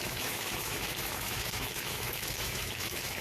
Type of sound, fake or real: fake